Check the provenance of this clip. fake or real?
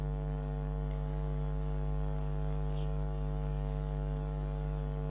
fake